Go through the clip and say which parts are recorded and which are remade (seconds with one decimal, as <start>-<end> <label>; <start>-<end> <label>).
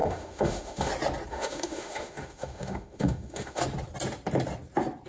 0.0-0.9 remade; 0.9-1.3 recorded; 1.3-3.6 remade; 3.6-5.1 recorded